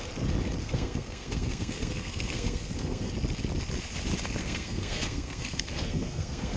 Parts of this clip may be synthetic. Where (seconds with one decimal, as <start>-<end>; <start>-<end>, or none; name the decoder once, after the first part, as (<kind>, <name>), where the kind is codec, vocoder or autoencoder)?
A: 0.6-3.1 (codec, SNAC); 4.4-6.6